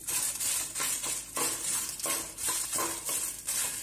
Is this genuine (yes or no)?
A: yes